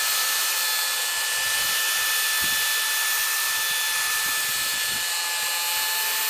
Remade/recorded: recorded